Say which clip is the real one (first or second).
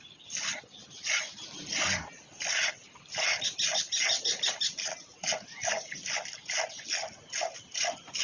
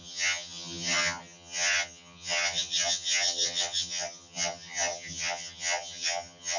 first